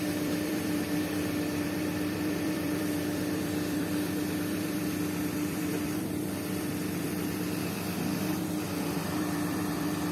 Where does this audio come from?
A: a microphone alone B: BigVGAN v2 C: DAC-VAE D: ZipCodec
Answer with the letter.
B